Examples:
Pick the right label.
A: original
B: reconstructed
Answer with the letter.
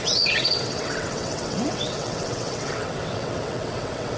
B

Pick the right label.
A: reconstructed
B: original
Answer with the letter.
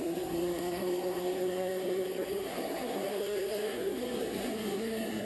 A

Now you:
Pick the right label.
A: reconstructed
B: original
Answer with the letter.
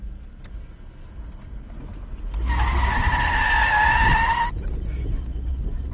B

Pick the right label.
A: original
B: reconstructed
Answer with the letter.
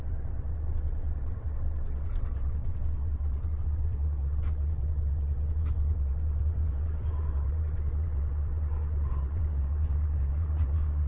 B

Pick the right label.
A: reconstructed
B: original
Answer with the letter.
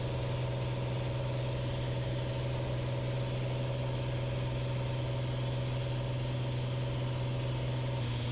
B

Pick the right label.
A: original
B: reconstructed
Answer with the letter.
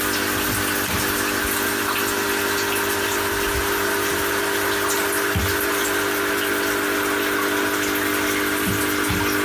A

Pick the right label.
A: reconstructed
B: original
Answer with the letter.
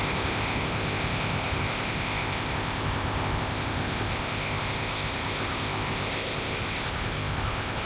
A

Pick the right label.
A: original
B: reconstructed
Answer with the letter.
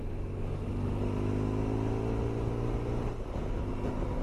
A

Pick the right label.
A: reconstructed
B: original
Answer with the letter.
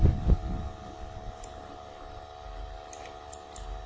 B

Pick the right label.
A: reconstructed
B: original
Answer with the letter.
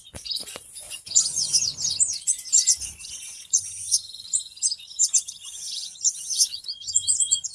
A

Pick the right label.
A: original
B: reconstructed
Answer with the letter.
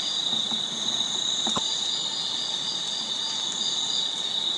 A